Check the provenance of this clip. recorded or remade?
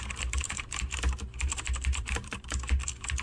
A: remade